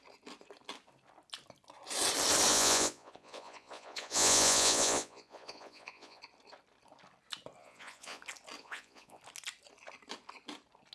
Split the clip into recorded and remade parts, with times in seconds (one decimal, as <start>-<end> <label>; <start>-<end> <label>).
0.0-2.5 recorded; 2.5-6.2 remade; 6.2-7.6 recorded; 7.6-8.2 remade; 8.2-8.6 recorded; 8.6-9.2 remade; 9.2-10.9 recorded